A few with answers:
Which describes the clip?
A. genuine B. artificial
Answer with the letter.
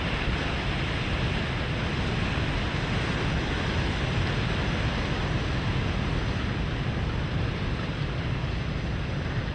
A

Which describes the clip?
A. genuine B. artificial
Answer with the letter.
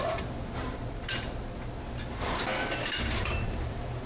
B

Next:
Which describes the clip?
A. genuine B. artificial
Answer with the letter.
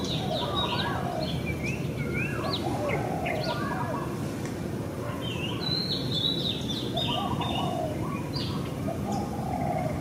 A